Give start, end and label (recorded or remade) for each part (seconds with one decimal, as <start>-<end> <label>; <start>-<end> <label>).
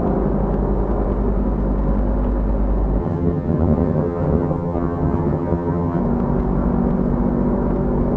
0.0-3.0 recorded; 3.0-6.0 remade; 6.0-8.2 recorded